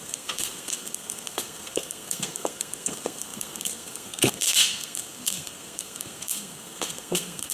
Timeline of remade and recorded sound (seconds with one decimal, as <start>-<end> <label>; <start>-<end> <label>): 0.0-7.5 remade